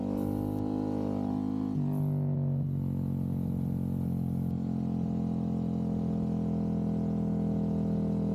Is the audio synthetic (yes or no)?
no